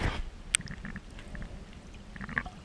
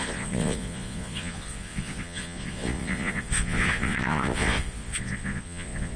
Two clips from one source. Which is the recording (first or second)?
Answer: first